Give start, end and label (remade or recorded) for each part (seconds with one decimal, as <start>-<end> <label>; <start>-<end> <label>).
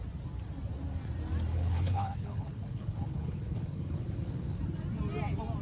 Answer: 0.0-1.5 recorded; 1.5-4.6 remade; 4.6-5.6 recorded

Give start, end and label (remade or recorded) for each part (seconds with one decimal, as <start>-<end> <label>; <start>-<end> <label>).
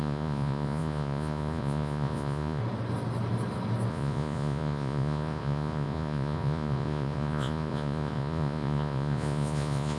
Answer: 0.0-2.6 remade; 2.6-3.9 recorded; 3.9-10.0 remade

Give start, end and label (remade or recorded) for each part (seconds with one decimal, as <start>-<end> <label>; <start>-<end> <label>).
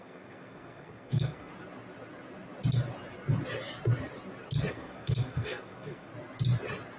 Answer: 0.0-1.5 remade; 1.5-4.7 recorded; 4.7-6.1 remade; 6.1-7.0 recorded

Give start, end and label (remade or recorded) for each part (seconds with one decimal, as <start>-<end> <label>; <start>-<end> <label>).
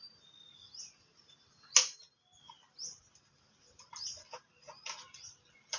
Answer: 0.0-5.8 recorded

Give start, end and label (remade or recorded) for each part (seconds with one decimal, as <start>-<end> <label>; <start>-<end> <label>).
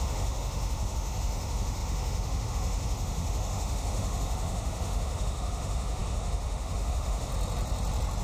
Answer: 0.0-7.3 remade; 7.3-8.2 recorded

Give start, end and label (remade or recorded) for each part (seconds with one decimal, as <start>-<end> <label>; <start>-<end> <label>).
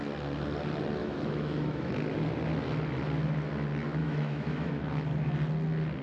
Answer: 0.0-1.0 recorded; 1.0-2.0 remade; 2.0-4.0 recorded; 4.0-4.8 remade; 4.8-6.0 recorded